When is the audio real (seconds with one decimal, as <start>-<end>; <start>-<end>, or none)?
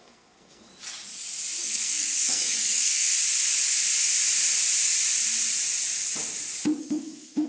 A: 0.7-1.6; 3.1-6.8